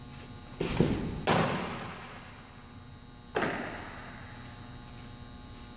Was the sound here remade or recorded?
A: recorded